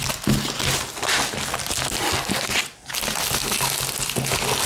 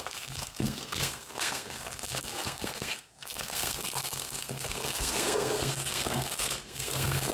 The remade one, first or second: second